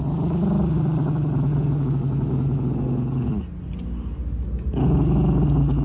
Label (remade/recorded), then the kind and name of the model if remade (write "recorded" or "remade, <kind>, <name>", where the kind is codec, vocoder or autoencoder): recorded